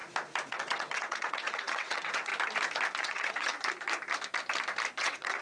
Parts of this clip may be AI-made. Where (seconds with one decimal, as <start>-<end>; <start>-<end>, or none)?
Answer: 0.5-2.3; 3.0-3.5; 5.0-5.4